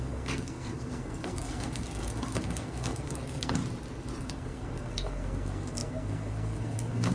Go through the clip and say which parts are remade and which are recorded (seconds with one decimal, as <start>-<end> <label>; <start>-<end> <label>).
0.0-3.6 remade; 3.6-4.2 recorded; 4.2-7.1 remade